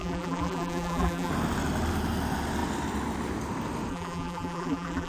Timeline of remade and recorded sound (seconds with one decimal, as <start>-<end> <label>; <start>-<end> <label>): 0.0-1.3 remade; 1.3-3.9 recorded; 3.9-5.1 remade